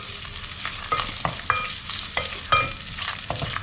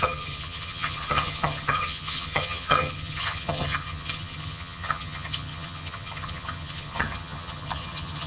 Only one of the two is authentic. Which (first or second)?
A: first